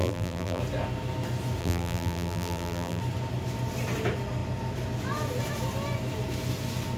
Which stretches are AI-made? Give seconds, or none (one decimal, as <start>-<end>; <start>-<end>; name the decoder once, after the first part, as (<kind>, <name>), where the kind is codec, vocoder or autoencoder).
0.0-0.6 (vocoder, BigVGAN v2); 1.6-3.0